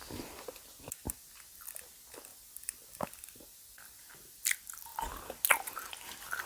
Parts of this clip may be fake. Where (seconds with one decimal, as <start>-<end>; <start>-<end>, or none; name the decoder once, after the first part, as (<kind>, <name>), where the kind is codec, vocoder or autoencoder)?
2.3-4.4 (vocoder, BigVGAN v2)